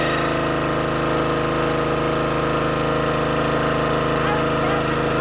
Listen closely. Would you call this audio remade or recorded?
recorded